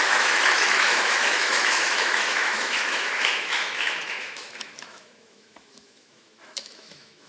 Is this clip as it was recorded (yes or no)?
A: no